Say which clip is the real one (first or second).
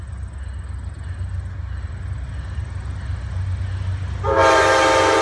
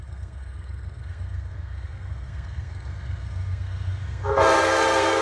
first